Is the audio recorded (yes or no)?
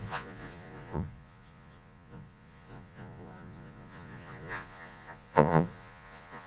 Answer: no